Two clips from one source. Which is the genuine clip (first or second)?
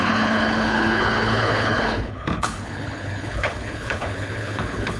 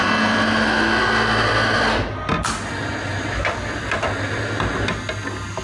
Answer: second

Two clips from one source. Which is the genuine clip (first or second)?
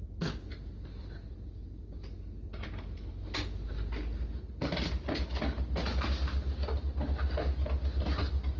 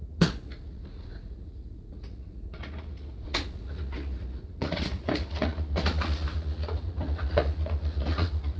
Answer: first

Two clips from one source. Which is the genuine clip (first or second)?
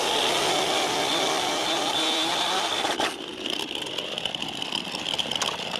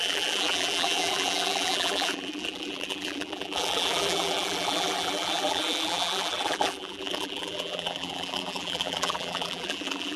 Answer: first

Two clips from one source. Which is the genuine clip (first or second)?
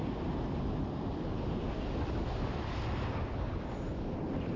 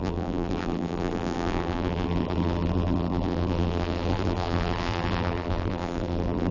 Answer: first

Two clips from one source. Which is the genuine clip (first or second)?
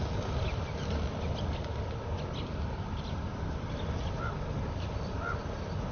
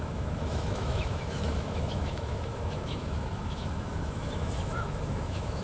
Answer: first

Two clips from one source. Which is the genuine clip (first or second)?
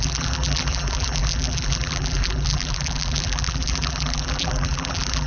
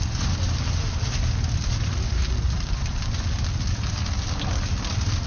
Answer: second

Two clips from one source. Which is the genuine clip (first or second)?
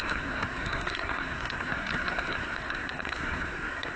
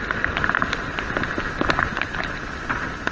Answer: second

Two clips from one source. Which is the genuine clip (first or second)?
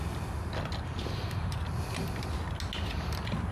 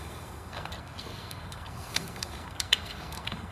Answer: first